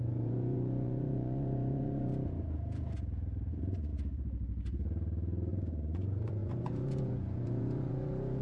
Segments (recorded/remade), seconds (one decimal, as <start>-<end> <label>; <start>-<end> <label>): 0.0-2.1 remade; 2.1-3.5 recorded; 3.5-3.9 remade; 3.9-5.5 recorded; 5.5-8.4 remade